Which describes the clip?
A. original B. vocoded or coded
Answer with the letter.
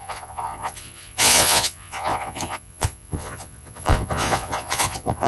B